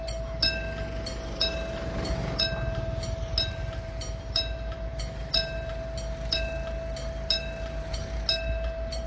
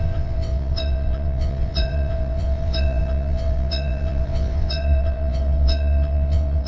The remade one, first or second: second